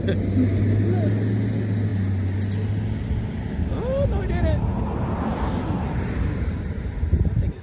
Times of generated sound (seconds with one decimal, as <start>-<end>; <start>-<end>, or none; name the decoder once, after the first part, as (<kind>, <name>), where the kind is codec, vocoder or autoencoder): none